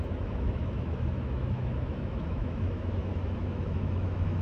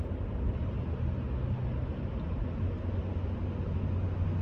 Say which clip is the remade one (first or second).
first